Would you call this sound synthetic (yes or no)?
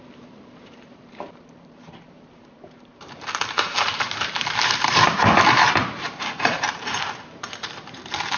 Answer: yes